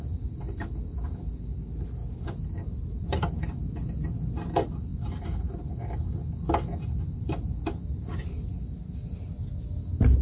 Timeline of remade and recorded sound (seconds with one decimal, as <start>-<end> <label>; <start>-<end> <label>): 0.0-10.2 recorded